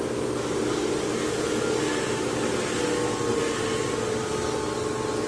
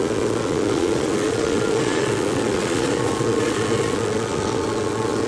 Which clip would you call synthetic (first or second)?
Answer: second